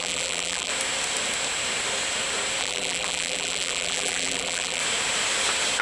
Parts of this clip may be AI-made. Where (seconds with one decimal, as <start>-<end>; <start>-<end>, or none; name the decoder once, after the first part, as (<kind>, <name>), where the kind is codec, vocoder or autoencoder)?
0.0-0.7 (vocoder, BigVGAN v2); 2.6-4.8